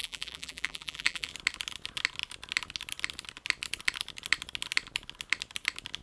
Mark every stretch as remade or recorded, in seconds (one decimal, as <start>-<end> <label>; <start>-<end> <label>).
0.0-1.3 remade; 1.3-6.0 recorded